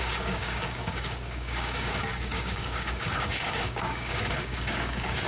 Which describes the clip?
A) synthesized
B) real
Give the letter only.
A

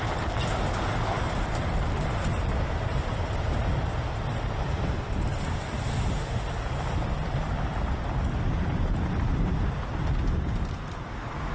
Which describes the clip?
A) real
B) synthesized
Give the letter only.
A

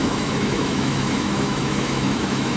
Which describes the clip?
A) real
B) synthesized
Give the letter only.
B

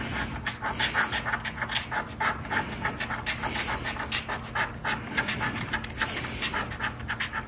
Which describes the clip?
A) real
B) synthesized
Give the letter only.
A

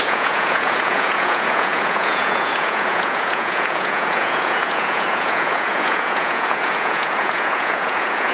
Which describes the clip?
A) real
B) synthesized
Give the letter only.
B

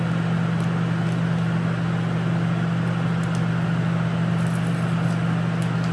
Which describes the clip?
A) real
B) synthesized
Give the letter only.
A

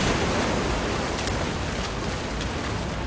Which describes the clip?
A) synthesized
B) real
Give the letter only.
B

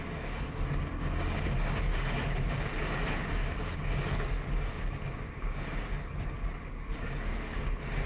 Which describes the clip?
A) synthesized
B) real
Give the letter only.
A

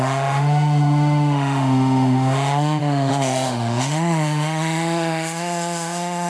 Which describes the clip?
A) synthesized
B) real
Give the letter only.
A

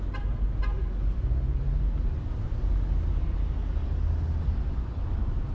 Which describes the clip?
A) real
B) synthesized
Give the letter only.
A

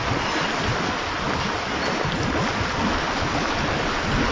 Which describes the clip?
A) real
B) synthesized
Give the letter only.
A